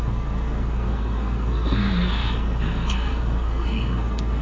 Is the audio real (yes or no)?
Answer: no